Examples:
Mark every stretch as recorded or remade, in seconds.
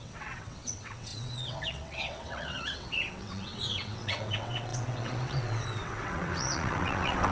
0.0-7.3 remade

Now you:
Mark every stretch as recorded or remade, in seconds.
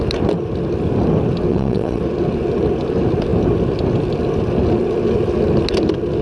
0.0-1.5 recorded; 1.5-2.0 remade; 2.0-6.2 recorded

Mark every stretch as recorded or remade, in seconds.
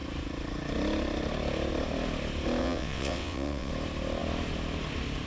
0.0-2.6 recorded; 2.6-3.7 remade; 3.7-5.3 recorded